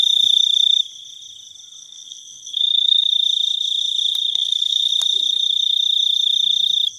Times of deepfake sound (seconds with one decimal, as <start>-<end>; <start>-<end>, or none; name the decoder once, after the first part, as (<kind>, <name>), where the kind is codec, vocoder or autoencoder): 1.8-3.1 (codec, SNAC); 4.3-4.9